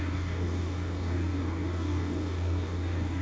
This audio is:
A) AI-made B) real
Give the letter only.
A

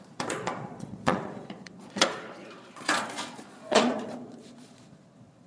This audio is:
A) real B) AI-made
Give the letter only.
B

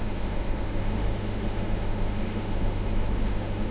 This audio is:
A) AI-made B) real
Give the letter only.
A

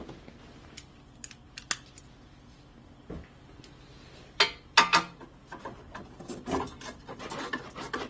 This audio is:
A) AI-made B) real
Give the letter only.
B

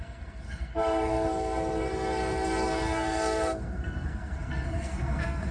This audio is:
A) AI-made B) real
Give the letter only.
A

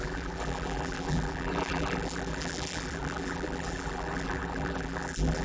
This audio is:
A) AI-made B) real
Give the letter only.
A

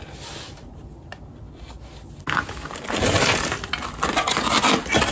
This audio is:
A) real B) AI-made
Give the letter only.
A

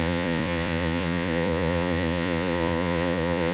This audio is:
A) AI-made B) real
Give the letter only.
A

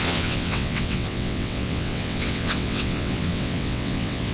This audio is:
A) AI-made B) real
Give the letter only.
A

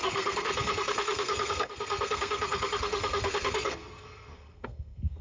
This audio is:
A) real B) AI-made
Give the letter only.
B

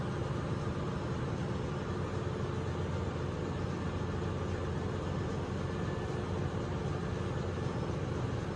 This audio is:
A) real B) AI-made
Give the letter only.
A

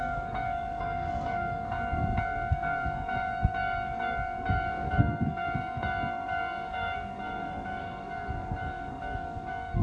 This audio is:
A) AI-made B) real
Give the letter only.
A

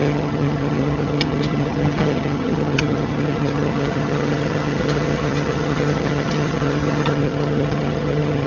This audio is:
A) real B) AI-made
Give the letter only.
B